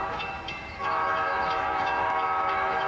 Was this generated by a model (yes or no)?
yes